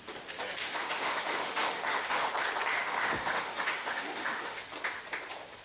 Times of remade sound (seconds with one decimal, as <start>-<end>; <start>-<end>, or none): 0.6-2.3; 2.8-4.6